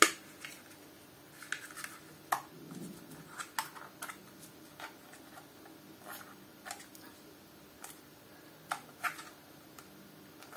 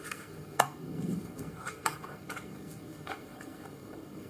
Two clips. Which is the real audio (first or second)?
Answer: first